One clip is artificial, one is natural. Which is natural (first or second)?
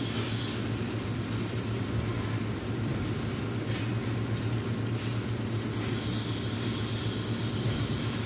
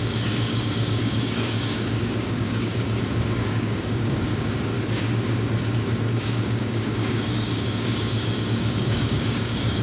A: first